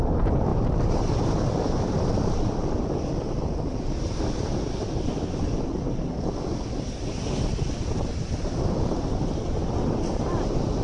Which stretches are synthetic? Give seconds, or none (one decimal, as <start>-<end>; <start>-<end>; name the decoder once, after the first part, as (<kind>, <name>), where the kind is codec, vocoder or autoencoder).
none